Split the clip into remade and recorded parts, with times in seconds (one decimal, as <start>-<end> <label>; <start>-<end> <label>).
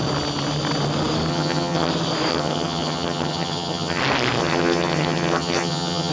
0.0-1.3 recorded; 1.3-1.9 remade; 1.9-2.3 recorded; 2.3-4.0 remade; 4.0-4.4 recorded; 4.4-6.1 remade